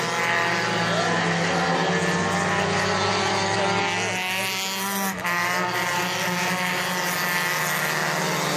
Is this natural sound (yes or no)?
yes